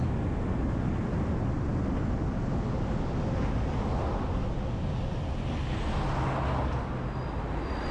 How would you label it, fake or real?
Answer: real